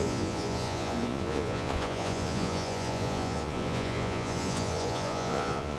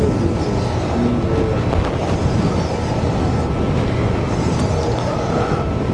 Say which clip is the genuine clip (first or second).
second